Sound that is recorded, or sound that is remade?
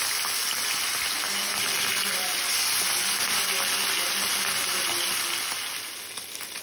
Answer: recorded